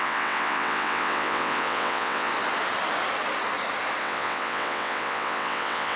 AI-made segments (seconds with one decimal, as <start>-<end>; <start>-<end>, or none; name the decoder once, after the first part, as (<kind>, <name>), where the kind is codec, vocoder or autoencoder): 0.0-2.3 (vocoder, WaveNeXt); 4.0-6.0